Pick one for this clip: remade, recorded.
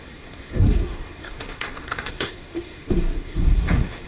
remade